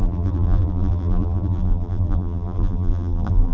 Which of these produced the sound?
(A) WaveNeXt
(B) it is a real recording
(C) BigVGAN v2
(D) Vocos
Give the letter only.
C